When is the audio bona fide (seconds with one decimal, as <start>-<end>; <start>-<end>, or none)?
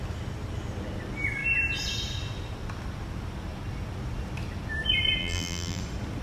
0.0-5.2; 5.8-6.2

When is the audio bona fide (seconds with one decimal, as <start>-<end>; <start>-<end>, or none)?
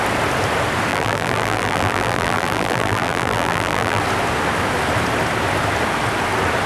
0.0-0.9; 4.0-6.7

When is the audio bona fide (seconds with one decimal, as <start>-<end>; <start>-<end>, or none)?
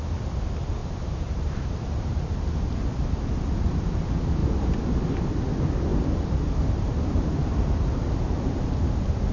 0.0-0.8; 2.3-4.4; 4.9-5.9; 8.6-9.3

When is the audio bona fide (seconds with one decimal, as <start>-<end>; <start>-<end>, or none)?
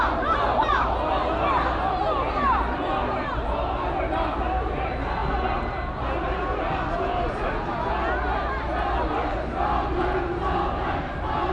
0.0-11.5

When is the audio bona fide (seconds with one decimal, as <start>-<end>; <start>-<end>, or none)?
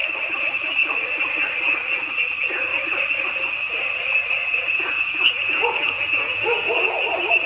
0.0-4.1; 6.7-7.5